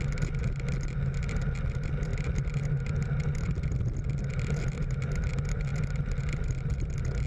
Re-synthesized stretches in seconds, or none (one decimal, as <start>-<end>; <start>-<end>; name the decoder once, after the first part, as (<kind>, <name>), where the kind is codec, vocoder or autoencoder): none